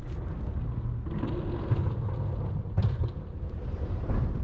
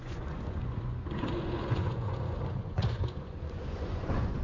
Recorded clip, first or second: first